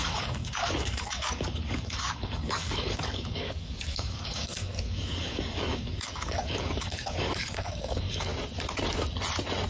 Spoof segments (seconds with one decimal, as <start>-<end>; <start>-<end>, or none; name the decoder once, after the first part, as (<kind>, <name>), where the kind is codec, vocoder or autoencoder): 0.0-8.3 (codec, DAC)